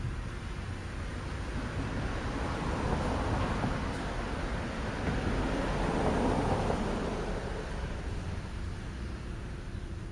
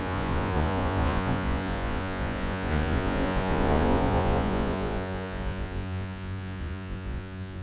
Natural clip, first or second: first